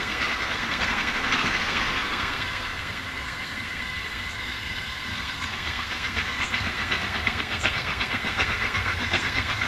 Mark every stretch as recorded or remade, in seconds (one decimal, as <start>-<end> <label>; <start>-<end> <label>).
0.0-9.7 remade